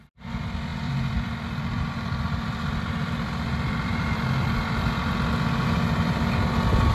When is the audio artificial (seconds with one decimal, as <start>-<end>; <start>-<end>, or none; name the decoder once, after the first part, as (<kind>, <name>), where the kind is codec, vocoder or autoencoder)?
0.7-4.8 (vocoder, BigVGAN v2)